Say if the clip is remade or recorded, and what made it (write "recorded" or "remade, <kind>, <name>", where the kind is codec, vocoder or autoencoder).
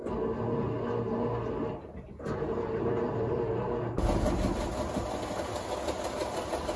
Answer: recorded